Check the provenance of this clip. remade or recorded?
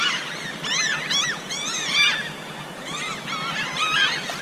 recorded